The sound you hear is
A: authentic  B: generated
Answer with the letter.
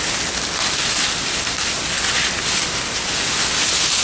A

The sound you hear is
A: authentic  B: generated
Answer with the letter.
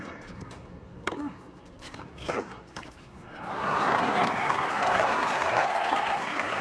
B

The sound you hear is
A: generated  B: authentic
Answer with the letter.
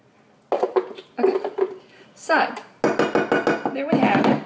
B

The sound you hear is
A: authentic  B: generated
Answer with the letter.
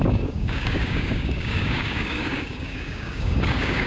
B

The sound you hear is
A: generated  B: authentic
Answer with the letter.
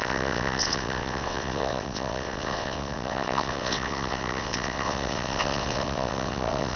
A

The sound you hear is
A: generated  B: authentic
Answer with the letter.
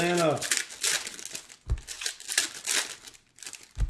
B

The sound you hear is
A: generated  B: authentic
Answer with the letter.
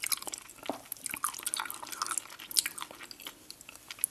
B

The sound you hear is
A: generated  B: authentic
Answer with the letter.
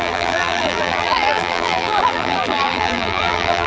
A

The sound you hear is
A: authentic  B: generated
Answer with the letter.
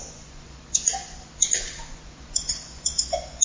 B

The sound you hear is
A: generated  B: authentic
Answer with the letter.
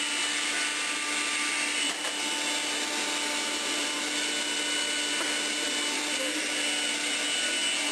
B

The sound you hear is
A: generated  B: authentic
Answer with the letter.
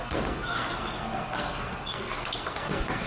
A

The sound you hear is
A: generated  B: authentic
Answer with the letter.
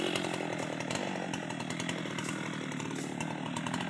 B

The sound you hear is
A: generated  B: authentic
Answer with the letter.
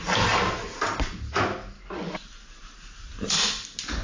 B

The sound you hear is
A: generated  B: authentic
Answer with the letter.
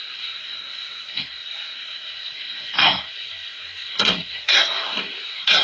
A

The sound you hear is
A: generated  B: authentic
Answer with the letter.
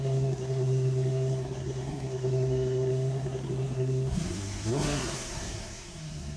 A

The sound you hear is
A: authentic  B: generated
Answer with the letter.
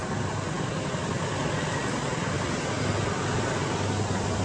A